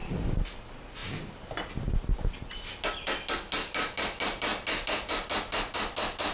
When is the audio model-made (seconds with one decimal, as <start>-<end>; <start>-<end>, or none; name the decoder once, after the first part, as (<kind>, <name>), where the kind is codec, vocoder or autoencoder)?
none